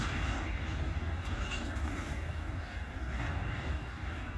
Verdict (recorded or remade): remade